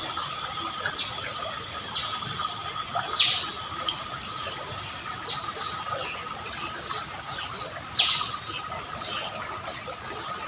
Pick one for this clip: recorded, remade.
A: recorded